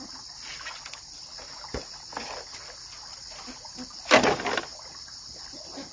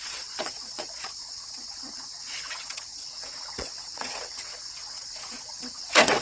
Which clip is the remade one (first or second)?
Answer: second